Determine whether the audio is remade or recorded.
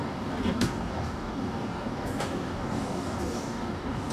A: remade